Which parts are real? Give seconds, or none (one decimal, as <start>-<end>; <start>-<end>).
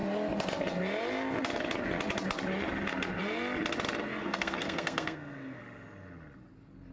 0.0-4.2; 5.6-6.9